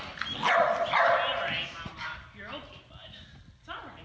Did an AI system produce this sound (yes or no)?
no